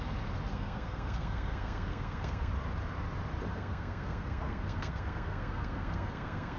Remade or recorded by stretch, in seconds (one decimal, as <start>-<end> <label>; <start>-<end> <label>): 0.0-0.5 recorded; 0.5-2.5 remade; 2.5-3.5 recorded; 3.5-6.6 remade